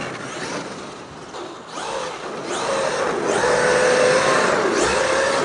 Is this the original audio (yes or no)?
yes